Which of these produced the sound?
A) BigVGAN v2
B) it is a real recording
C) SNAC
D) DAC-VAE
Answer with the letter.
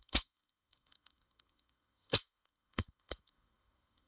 C